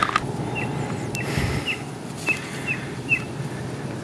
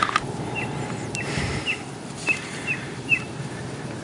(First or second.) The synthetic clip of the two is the second